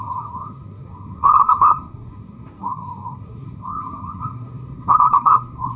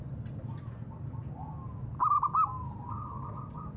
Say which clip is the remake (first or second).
first